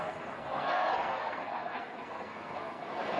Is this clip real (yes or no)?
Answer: no